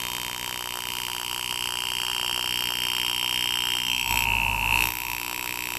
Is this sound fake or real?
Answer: real